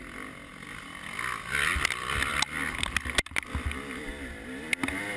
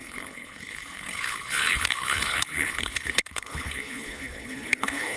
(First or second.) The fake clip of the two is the second